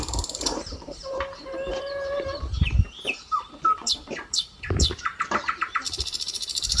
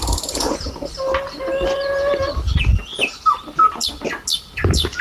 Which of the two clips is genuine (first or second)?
second